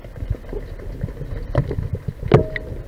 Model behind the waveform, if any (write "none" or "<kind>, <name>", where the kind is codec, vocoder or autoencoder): none